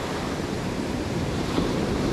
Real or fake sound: fake